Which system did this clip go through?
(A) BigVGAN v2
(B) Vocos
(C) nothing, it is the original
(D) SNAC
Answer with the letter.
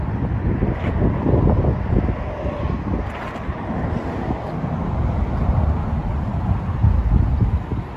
C